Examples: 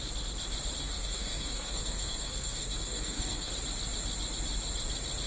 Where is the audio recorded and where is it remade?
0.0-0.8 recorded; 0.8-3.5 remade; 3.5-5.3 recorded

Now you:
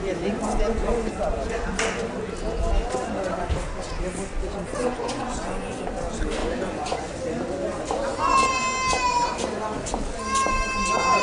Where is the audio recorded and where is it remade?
0.0-4.8 recorded; 4.8-5.7 remade; 5.7-6.4 recorded; 6.4-7.1 remade; 7.1-11.2 recorded

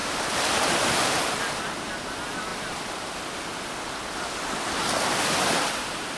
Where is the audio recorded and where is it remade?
0.0-2.5 recorded; 2.5-4.0 remade; 4.0-6.2 recorded